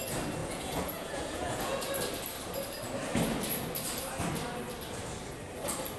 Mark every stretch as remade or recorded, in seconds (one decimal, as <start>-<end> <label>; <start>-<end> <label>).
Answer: 0.0-0.4 recorded; 0.4-1.9 remade; 1.9-6.0 recorded